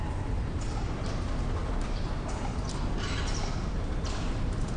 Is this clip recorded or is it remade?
recorded